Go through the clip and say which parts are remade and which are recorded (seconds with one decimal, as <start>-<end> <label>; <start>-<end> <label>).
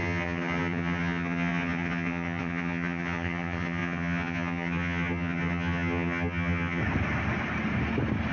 0.0-6.8 remade; 6.8-8.3 recorded